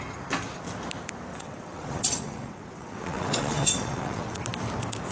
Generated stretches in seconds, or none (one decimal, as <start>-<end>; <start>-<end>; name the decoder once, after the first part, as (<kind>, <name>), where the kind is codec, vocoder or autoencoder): 1.3-4.4 (vocoder, WaveNeXt)